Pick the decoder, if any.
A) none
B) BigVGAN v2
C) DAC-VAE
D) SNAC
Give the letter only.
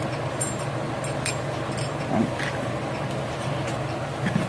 A